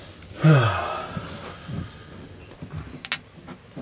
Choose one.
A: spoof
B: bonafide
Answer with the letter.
B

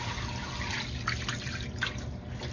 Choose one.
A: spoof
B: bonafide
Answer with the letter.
B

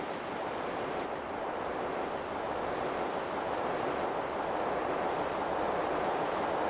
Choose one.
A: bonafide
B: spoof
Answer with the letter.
A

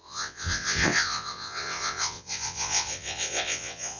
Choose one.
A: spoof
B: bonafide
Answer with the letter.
A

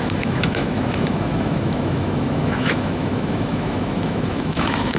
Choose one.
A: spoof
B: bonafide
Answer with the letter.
A